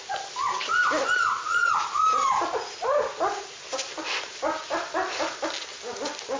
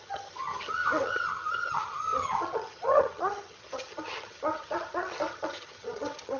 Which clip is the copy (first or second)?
second